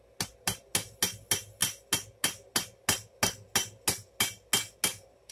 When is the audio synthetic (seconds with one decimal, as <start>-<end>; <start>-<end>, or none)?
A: none

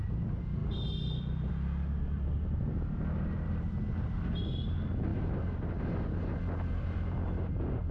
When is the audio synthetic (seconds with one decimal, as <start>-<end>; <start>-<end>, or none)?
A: 0.6-1.5

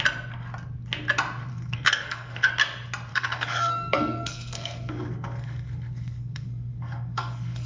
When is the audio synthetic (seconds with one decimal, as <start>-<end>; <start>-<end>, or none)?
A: 1.5-2.5; 3.1-7.7